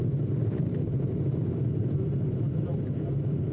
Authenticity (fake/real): real